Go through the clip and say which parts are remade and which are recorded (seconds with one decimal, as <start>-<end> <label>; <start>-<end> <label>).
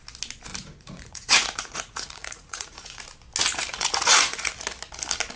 0.0-0.5 recorded; 0.5-3.0 remade; 3.0-3.7 recorded; 3.7-4.5 remade; 4.5-5.4 recorded